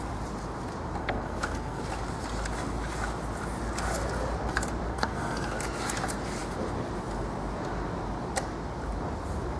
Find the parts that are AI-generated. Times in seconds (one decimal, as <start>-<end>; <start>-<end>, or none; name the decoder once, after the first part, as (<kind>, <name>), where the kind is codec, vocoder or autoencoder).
1.0-1.8 (codec, SNAC); 4.9-5.6